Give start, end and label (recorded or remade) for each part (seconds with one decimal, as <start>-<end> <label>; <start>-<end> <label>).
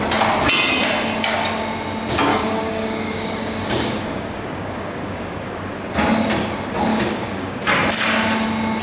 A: 0.0-2.3 recorded; 2.3-5.5 remade; 5.5-6.9 recorded; 6.9-7.6 remade; 7.6-8.8 recorded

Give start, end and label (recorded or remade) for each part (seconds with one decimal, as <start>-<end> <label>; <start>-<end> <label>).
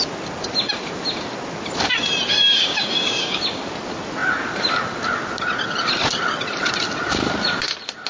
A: 0.0-2.3 recorded; 2.3-3.4 remade; 3.4-8.1 recorded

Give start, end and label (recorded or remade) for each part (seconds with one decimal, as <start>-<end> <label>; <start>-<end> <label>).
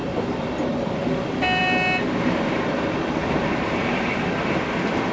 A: 0.0-5.1 recorded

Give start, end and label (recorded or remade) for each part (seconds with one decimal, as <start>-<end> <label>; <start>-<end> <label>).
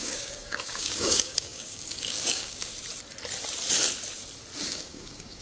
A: 0.0-2.7 remade; 2.7-4.6 recorded; 4.6-5.4 remade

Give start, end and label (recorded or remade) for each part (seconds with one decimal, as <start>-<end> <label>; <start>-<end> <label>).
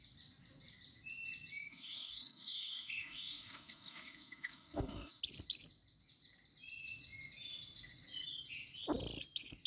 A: 0.0-1.7 recorded; 1.7-5.2 remade; 5.2-9.7 recorded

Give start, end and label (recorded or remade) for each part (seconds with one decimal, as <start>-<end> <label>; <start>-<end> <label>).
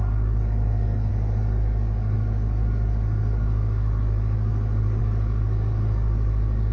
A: 0.0-6.7 remade